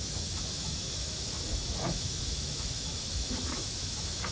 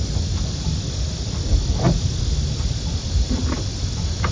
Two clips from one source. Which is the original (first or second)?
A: second